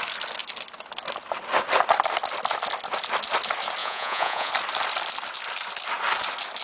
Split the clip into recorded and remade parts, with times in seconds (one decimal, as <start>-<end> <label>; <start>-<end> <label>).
0.0-3.8 recorded; 3.8-4.5 remade; 4.5-6.6 recorded